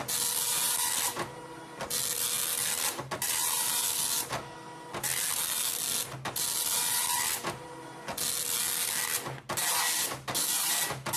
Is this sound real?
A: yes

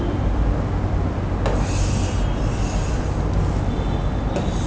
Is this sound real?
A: yes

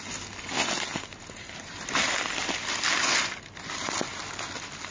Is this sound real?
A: yes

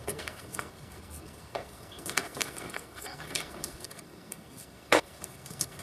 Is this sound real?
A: no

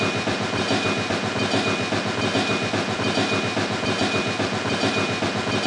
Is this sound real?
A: yes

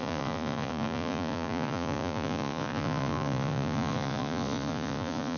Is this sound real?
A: no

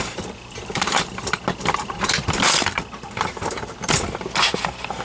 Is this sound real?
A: no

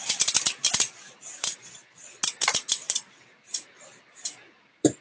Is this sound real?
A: no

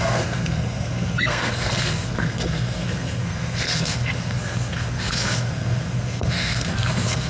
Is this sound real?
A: no